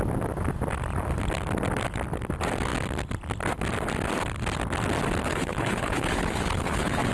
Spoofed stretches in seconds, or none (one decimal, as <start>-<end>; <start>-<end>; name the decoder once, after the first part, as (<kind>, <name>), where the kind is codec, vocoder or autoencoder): 5.2-7.1 (codec, HILCodec)